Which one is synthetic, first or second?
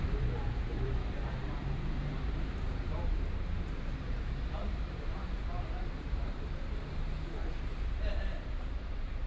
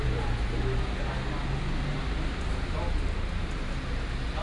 first